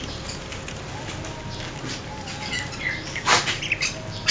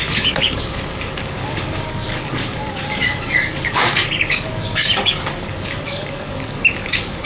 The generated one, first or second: second